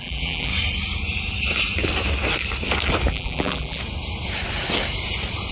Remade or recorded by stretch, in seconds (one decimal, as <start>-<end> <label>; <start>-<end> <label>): 0.0-0.5 remade; 0.5-3.1 recorded; 3.1-3.8 remade; 3.8-5.5 recorded